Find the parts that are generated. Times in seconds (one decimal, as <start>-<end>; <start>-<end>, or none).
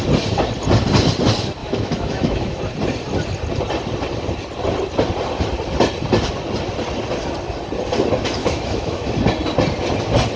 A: 1.6-2.6; 8.4-9.1